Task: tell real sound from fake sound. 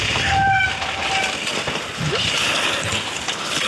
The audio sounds real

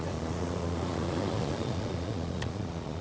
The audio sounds fake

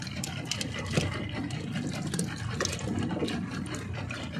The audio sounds real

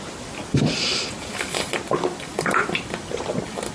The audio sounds real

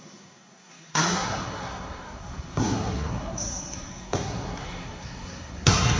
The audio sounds fake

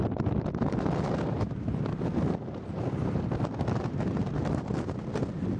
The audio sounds fake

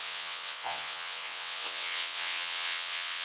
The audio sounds fake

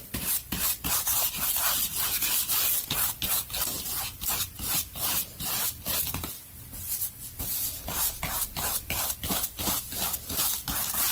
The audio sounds fake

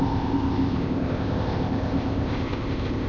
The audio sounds fake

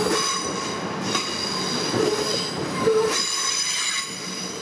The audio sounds real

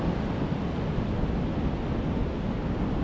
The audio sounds real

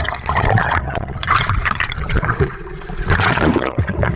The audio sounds fake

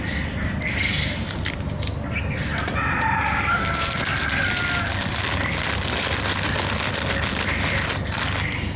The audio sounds real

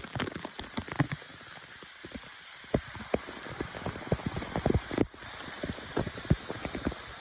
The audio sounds real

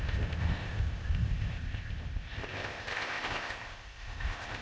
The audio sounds fake